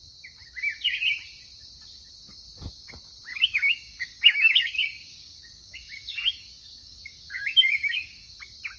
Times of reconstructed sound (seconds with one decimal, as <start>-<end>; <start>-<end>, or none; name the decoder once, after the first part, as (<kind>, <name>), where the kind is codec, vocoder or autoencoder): 3.3-8.4 (codec, DAC)

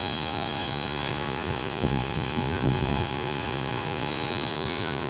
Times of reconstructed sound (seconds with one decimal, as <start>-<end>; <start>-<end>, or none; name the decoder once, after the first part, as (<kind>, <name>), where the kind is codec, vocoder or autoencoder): 0.0-5.1 (vocoder, Vocos)

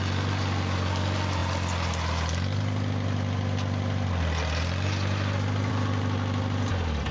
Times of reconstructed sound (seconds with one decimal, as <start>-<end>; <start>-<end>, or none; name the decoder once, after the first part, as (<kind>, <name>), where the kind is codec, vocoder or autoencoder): none

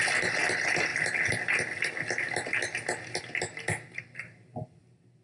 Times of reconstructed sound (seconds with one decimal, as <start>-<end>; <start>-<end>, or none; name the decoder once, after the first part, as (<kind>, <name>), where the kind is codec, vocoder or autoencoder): 0.0-0.9 (vocoder, BigVGAN v2); 4.0-5.2